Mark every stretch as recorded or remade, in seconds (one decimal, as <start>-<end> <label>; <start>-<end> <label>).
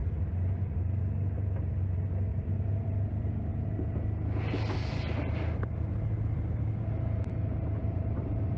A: 0.0-1.0 remade; 1.0-2.3 recorded; 2.3-3.5 remade; 3.5-7.8 recorded; 7.8-8.6 remade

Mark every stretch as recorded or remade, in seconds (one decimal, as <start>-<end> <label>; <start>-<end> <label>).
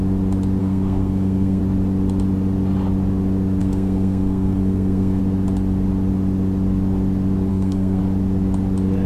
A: 0.0-0.6 recorded; 0.6-1.6 remade; 1.6-3.6 recorded; 3.6-5.2 remade; 5.2-7.5 recorded; 7.5-8.0 remade; 8.0-9.1 recorded